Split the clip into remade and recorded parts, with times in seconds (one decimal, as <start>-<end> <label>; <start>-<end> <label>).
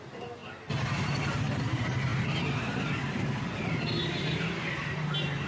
0.0-5.5 recorded